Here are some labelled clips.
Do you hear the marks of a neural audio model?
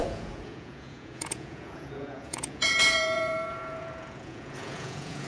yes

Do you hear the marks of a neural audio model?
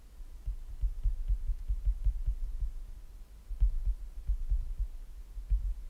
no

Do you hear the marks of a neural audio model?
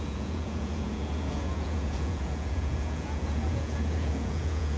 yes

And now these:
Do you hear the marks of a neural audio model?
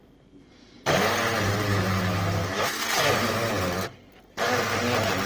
no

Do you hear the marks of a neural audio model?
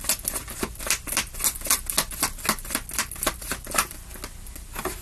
no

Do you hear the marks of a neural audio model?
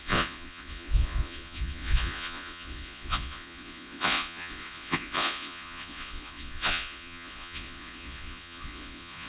yes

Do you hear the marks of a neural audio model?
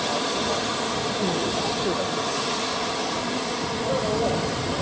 no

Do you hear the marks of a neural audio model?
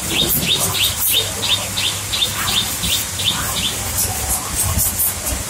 no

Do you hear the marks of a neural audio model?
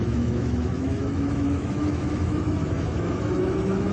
yes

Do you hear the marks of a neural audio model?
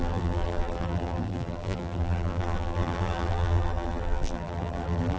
yes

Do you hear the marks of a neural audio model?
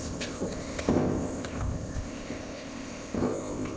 yes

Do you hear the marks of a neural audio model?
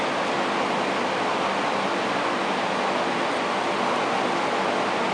no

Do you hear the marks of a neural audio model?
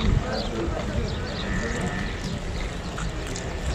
no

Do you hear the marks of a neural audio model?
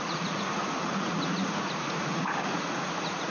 yes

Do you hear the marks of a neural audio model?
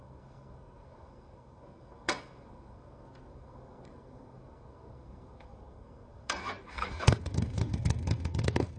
yes